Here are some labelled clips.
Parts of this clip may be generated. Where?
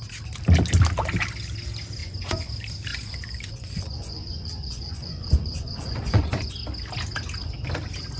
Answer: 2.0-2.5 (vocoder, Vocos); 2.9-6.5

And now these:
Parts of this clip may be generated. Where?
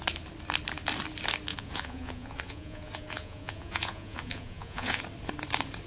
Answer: 1.5-5.0 (vocoder, Vocos)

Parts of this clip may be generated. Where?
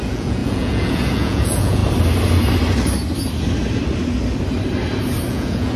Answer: 0.0-1.8 (vocoder, Vocos); 5.3-5.8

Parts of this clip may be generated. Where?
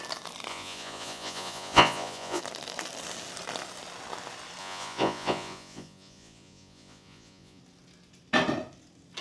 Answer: 0.5-2.4 (vocoder, Vocos); 4.6-7.6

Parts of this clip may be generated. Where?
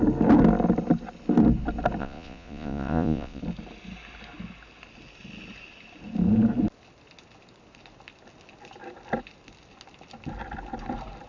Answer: 2.0-3.4 (vocoder, Vocos)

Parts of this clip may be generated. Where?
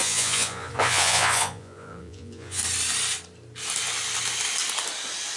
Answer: 0.0-2.6 (vocoder, Vocos)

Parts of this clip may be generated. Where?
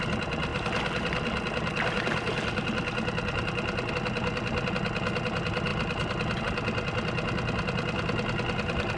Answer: none